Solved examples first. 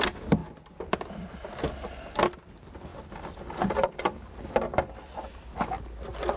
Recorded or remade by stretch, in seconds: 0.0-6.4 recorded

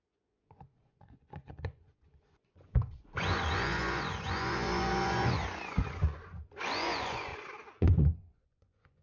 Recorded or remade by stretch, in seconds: 0.0-7.3 remade; 7.3-7.8 recorded; 7.8-9.0 remade

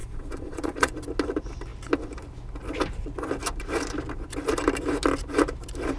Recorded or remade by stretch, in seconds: 0.0-0.9 remade; 0.9-6.0 recorded

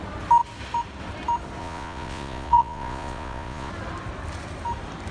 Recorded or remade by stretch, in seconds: 0.0-1.6 recorded; 1.6-3.7 remade; 3.7-5.1 recorded